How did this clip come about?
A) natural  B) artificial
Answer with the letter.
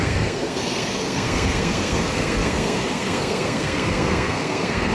B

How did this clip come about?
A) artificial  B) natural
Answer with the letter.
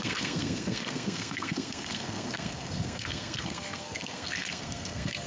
A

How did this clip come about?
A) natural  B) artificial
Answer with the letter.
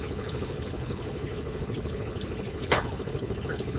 B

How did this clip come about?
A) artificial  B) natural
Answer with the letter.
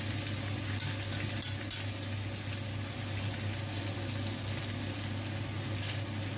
B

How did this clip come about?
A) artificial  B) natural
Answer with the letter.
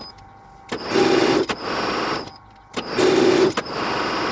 B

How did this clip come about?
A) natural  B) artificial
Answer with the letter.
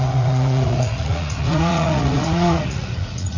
B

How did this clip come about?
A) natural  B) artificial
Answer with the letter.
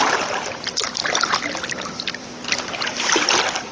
A